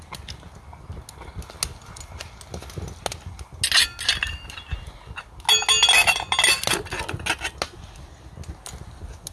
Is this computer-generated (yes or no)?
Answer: no